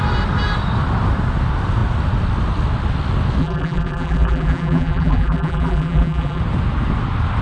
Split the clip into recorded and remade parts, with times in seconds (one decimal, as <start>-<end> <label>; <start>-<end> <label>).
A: 0.0-3.4 recorded; 3.4-6.4 remade; 6.4-7.4 recorded